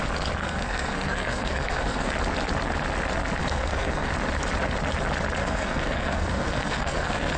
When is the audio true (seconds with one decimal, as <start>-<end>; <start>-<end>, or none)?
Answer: 0.0-0.4; 2.1-3.4; 4.1-5.4